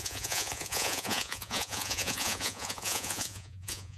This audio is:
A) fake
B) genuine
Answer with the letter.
A